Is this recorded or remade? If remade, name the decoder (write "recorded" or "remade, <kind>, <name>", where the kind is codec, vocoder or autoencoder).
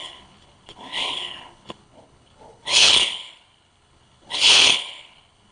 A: remade, codec, HILCodec